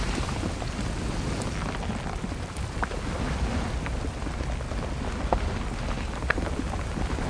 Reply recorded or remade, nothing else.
recorded